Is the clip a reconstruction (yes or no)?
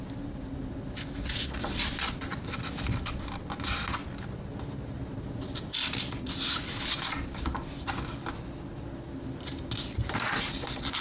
no